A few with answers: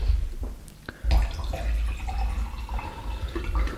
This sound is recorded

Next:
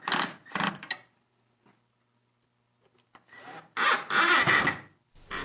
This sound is recorded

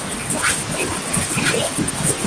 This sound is recorded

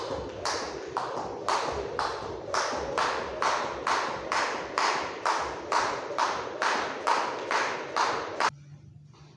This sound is recorded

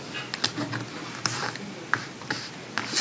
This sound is recorded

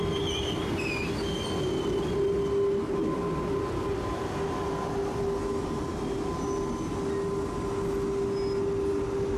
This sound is recorded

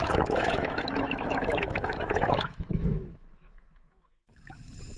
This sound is remade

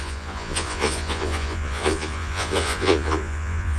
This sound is remade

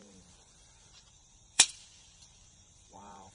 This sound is remade